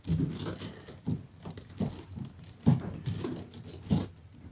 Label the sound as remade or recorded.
recorded